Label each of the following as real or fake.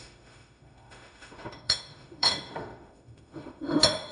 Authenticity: fake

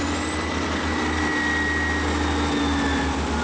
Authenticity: real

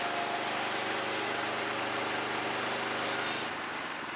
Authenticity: real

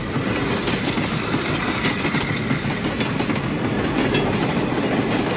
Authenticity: real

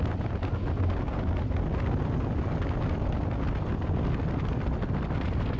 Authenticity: real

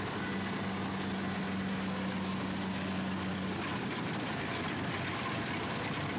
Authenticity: real